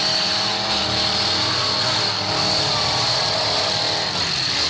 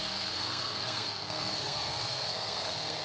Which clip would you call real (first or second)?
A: first